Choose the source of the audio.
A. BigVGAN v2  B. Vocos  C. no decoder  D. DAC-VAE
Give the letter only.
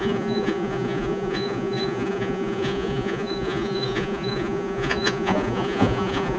B